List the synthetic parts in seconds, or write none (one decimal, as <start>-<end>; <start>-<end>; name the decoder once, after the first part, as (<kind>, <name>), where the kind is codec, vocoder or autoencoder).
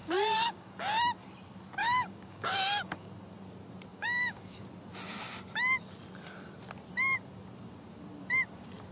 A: 0.0-0.7 (codec, DAC); 1.8-3.1; 3.9-4.6